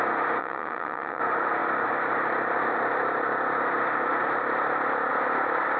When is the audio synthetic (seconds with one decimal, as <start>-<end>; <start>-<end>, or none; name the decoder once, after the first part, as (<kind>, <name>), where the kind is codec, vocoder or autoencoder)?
0.4-1.2 (vocoder, WaveNeXt)